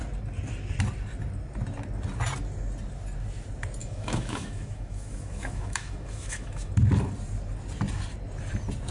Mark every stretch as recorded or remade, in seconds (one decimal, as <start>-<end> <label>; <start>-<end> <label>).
0.0-3.8 recorded; 3.8-6.7 remade; 6.7-8.9 recorded